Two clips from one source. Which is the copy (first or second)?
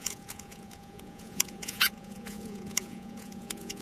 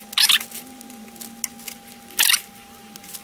first